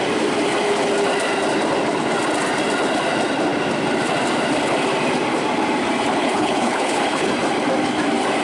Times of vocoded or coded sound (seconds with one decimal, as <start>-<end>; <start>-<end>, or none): 6.1-7.3